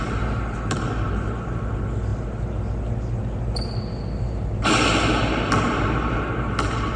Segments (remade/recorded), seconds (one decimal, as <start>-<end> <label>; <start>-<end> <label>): 0.0-7.0 recorded